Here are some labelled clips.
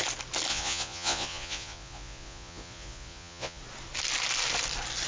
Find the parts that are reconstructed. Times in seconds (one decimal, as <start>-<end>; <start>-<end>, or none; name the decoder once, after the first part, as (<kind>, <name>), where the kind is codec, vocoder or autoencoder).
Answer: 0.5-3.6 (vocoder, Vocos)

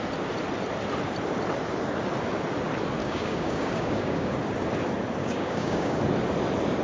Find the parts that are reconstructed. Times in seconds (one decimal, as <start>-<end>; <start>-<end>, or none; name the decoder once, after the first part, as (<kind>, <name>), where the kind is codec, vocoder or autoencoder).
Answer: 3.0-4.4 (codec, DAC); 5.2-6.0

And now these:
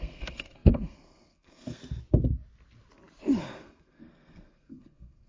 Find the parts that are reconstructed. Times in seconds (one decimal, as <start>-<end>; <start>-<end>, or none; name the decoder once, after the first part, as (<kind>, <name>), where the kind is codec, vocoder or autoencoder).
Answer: 0.0-1.8 (codec, SNAC); 3.4-5.3